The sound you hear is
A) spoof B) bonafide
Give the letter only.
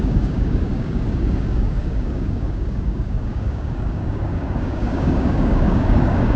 A